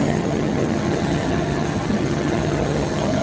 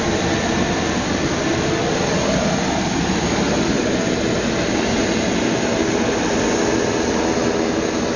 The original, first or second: second